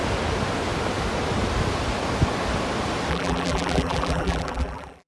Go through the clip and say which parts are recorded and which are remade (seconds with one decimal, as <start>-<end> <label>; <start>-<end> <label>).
0.0-3.1 recorded; 3.1-5.1 remade